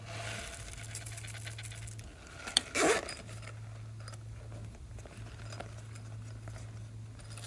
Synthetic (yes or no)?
no